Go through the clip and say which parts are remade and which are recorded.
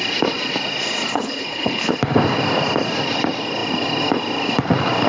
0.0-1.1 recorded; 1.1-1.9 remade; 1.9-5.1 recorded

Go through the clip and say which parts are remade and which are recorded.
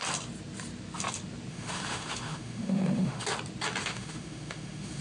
0.0-1.5 recorded; 1.5-3.2 remade; 3.2-3.8 recorded; 3.8-5.0 remade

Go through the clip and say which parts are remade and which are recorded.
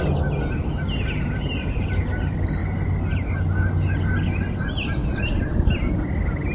0.0-6.5 recorded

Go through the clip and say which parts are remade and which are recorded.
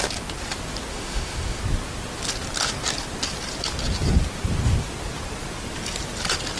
0.0-0.9 recorded; 0.9-1.6 remade; 1.6-6.6 recorded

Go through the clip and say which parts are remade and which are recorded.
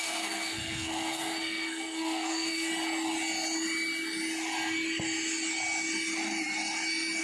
0.0-2.7 remade; 2.7-7.2 recorded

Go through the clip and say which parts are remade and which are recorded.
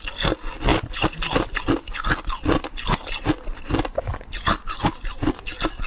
0.0-4.1 recorded; 4.1-5.4 remade; 5.4-5.9 recorded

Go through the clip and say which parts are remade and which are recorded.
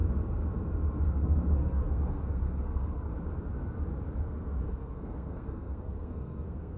0.0-1.0 recorded; 1.0-3.1 remade; 3.1-4.2 recorded; 4.2-6.8 remade